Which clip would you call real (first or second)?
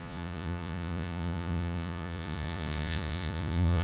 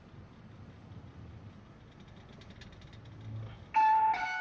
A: second